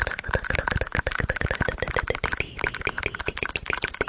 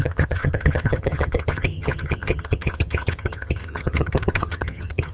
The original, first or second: first